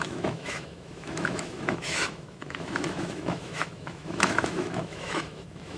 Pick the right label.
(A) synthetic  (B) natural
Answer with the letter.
A